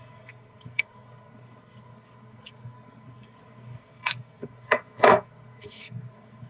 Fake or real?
fake